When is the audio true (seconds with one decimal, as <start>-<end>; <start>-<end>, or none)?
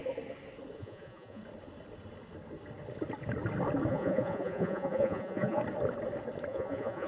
0.0-0.8; 1.4-3.9; 5.6-6.5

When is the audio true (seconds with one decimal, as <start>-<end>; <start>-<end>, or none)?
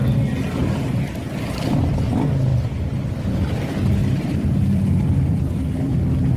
0.0-6.4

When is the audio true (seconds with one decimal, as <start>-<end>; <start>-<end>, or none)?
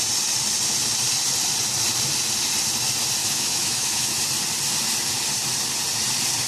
0.0-3.2; 4.2-6.5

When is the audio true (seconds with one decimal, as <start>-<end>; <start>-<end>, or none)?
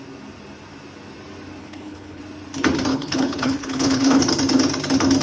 0.0-1.6; 2.2-2.9; 4.2-5.2